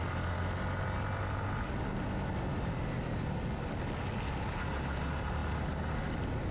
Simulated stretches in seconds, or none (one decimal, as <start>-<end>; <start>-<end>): none